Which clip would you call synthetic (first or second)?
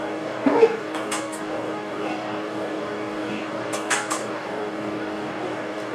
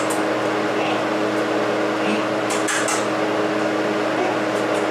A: first